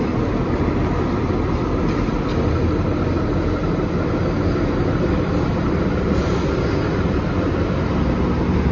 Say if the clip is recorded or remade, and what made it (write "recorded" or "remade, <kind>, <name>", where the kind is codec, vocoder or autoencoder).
recorded